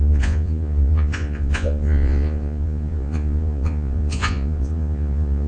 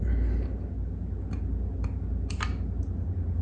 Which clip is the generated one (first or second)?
first